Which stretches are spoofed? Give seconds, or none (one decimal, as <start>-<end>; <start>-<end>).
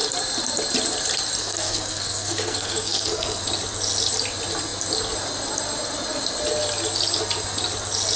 1.4-3.4